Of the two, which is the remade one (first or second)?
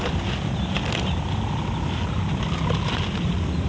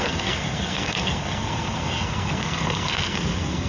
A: second